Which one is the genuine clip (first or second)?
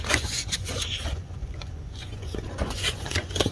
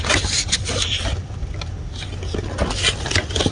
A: second